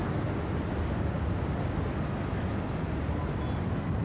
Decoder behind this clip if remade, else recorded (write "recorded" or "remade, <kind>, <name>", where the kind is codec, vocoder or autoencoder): recorded